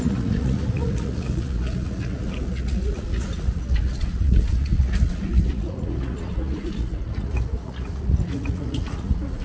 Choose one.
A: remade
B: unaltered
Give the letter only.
A